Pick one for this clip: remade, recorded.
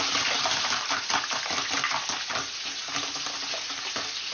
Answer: recorded